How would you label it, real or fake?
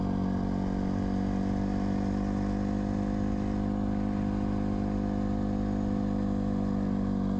real